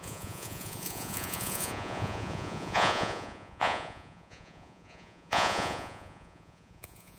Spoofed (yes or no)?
yes